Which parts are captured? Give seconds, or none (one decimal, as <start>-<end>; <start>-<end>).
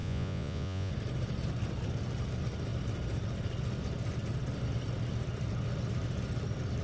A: 0.9-6.8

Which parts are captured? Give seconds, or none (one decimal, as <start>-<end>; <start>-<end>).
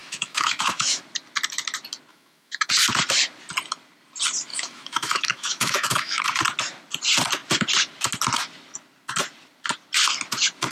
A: 1.0-2.1; 2.7-4.5; 6.2-10.7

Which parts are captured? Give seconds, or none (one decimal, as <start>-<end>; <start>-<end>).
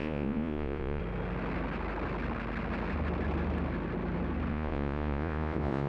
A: 1.0-4.5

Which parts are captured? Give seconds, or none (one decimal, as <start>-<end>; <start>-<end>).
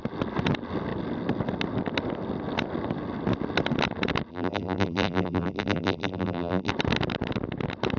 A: 0.0-4.3; 6.7-8.0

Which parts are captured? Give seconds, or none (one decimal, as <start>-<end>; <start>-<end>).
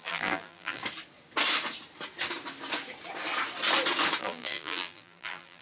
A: 0.8-4.2